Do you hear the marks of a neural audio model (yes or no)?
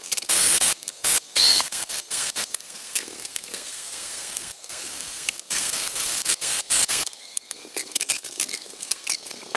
yes